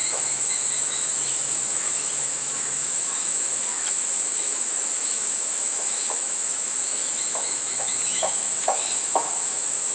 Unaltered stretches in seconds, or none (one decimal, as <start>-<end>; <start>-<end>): none